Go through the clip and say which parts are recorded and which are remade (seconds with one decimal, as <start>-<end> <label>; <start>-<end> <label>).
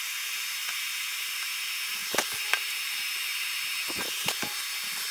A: 0.0-5.1 recorded